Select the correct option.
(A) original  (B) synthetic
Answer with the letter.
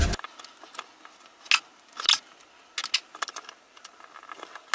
A